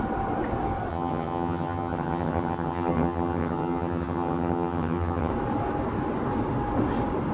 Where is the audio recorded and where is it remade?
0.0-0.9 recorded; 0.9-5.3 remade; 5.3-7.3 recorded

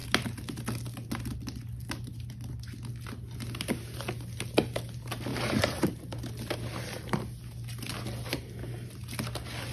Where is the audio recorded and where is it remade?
0.0-5.3 recorded; 5.3-6.3 remade; 6.3-9.7 recorded

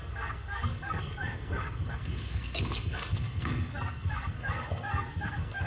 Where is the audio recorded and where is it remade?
0.0-5.7 remade

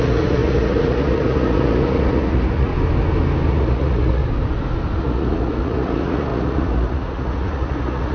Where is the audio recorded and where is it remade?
0.0-2.7 remade; 2.7-3.5 recorded; 3.5-4.2 remade; 4.2-5.0 recorded; 5.0-8.1 remade

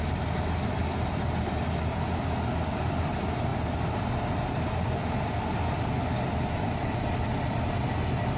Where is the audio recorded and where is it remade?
0.0-8.4 recorded